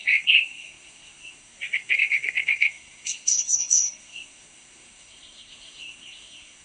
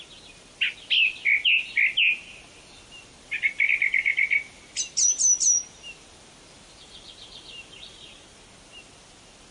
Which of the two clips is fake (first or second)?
first